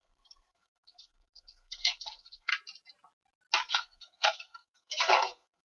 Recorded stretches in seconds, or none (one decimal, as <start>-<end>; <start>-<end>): 2.5-3.7